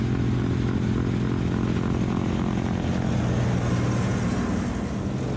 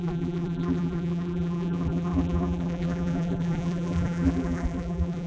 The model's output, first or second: second